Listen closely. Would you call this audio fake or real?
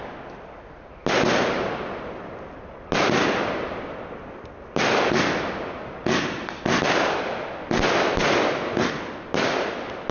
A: real